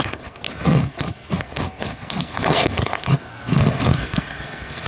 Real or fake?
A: fake